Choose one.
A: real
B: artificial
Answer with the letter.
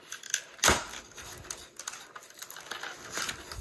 A